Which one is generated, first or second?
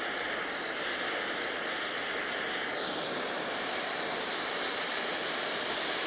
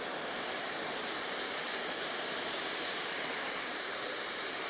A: second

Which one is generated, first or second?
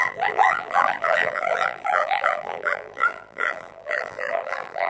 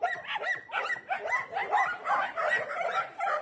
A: first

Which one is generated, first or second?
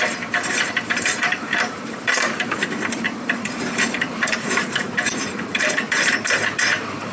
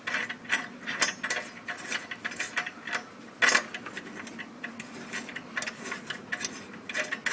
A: first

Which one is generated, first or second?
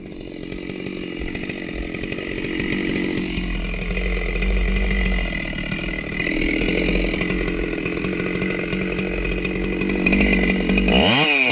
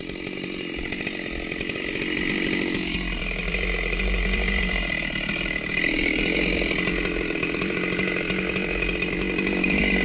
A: second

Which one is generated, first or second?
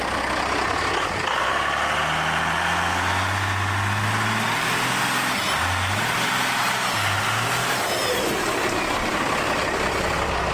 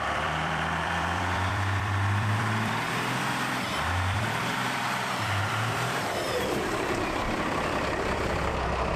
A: second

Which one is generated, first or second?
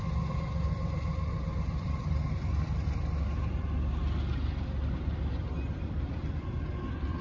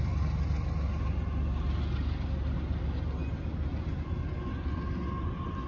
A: first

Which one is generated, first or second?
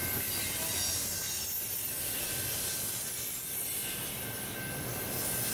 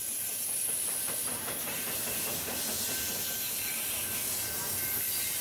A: second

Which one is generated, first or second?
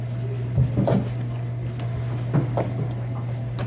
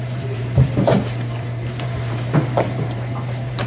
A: second